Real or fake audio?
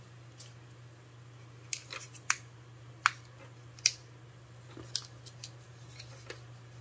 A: real